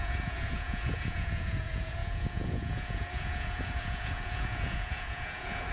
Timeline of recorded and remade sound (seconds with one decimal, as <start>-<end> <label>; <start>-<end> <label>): 0.0-5.7 remade